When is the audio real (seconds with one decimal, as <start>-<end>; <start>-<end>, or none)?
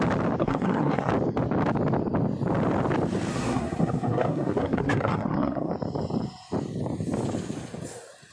0.0-0.4; 1.1-3.3; 5.7-8.3